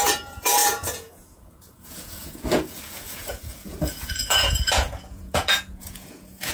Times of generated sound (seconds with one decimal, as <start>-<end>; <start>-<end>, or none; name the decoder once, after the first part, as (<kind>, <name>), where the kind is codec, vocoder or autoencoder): 0.0-6.5 (vocoder, Vocos)